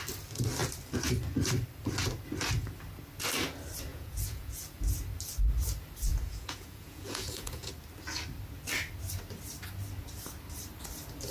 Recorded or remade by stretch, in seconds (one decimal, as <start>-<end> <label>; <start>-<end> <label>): 0.0-3.9 recorded; 3.9-4.8 remade; 4.8-6.1 recorded; 6.1-7.7 remade; 7.7-11.3 recorded